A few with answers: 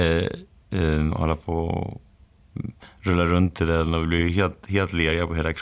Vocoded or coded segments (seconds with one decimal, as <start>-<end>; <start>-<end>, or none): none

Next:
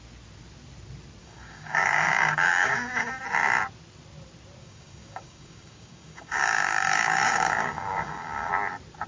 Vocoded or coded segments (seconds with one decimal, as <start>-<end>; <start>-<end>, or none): 1.2-3.2; 4.6-8.5

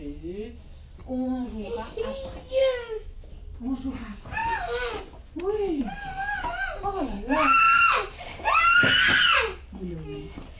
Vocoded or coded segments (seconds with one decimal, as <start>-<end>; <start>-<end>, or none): 2.6-3.3